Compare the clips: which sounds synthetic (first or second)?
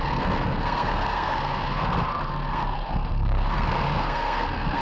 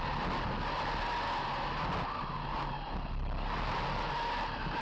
first